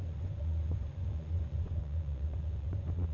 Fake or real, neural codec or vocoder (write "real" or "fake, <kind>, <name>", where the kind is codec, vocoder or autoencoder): fake, vocoder, Vocos